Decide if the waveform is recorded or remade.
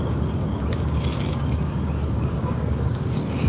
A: remade